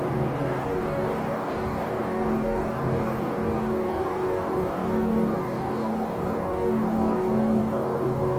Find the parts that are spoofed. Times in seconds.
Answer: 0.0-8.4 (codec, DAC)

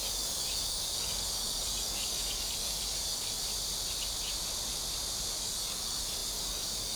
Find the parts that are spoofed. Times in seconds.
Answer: 0.0-3.5 (codec, DAC); 5.3-7.0

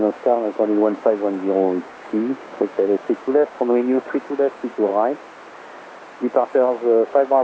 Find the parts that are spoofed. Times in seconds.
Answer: 0.0-4.9 (codec, DAC); 6.5-7.4

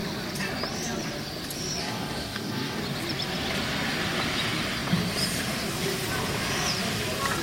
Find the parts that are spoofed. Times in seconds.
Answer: 1.8-2.8 (codec, DAC)